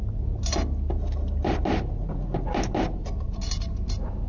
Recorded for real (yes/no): yes